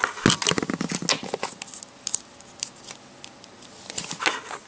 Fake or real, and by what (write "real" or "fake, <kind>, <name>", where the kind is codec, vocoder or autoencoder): real